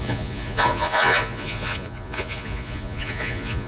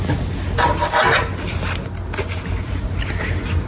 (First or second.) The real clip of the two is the second